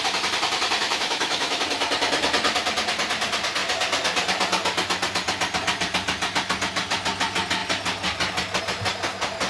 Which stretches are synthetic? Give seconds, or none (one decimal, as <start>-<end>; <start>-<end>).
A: 0.8-1.6